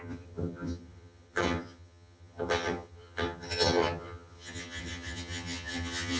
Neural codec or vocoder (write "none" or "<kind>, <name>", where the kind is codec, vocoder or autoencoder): vocoder, HiFi-GAN